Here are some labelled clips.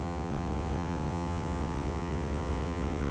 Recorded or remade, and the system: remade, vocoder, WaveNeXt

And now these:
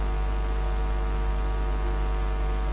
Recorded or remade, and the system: recorded